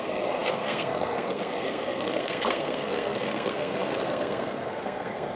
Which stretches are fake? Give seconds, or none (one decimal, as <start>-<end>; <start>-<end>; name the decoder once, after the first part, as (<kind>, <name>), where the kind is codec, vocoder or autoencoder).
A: 0.0-5.4 (codec, SNAC)